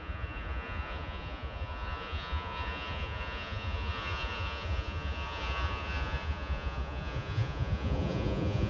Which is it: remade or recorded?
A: remade